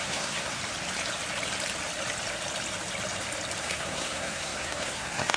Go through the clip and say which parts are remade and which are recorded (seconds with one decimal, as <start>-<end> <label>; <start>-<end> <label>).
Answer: 0.0-0.6 remade; 0.6-3.6 recorded; 3.6-5.4 remade